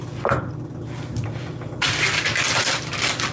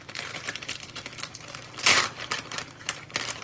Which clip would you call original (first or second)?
first